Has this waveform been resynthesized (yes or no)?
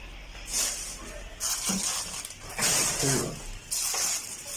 no